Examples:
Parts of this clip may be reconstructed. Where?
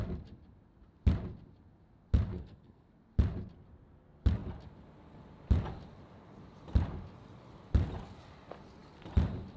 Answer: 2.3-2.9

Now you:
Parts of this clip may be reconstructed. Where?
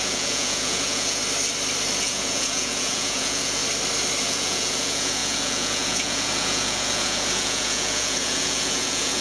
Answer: 0.0-1.2; 2.0-3.6; 4.2-9.2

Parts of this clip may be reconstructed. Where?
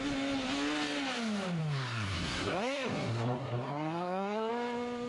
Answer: 1.6-4.5